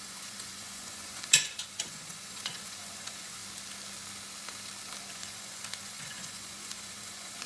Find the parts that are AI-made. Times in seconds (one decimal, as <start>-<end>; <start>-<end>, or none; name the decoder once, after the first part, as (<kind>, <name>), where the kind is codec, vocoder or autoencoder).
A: 0.0-3.4 (vocoder, Vocos); 5.1-7.5